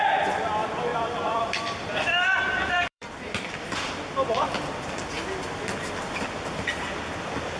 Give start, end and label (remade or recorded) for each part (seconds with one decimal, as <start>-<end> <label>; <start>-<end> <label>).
0.0-0.9 recorded; 0.9-3.9 remade; 3.9-7.6 recorded